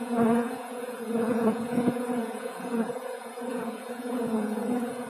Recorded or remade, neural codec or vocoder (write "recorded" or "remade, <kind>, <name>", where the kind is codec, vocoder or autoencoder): remade, vocoder, Vocos